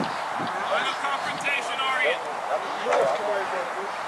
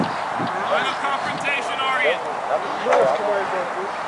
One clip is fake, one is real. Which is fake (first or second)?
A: first